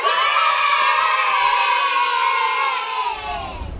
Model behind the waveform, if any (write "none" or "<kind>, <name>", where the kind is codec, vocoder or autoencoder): vocoder, BigVGAN v2